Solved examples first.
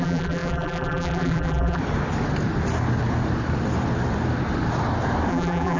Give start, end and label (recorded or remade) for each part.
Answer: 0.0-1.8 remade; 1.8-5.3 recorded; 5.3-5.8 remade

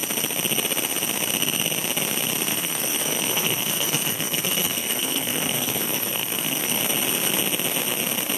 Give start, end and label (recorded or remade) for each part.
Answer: 0.0-2.5 recorded; 2.5-6.8 remade; 6.8-8.4 recorded

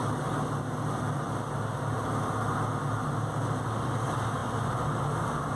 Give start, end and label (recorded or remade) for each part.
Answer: 0.0-5.6 recorded

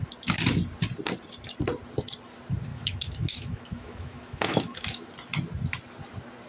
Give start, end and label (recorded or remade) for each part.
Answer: 0.0-2.7 recorded; 2.7-5.1 remade; 5.1-6.5 recorded

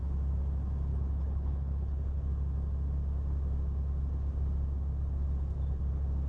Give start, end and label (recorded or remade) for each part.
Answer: 0.0-0.9 recorded; 0.9-2.3 remade; 2.3-6.3 recorded

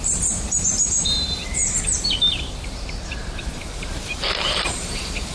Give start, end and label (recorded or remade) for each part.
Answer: 0.0-5.3 remade

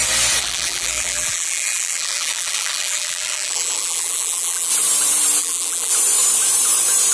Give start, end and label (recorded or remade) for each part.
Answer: 0.0-0.4 recorded; 0.4-4.7 remade; 4.7-5.4 recorded; 5.4-5.9 remade; 5.9-7.1 recorded

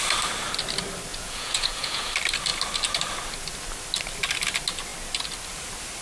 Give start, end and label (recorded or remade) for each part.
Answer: 0.0-1.1 recorded; 1.1-2.1 remade; 2.1-6.0 recorded